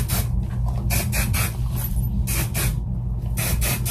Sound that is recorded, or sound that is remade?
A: recorded